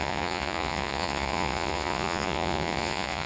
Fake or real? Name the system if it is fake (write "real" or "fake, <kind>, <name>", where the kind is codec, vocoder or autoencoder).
fake, vocoder, Vocos